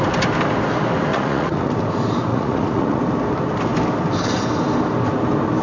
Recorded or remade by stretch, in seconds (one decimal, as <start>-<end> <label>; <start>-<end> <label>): 0.0-1.1 recorded; 1.1-1.7 remade; 1.7-2.3 recorded; 2.3-3.0 remade; 3.0-5.6 recorded